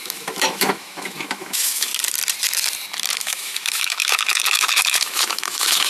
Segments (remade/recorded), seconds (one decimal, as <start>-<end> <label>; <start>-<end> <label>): 0.0-1.9 remade; 1.9-3.1 recorded; 3.1-5.9 remade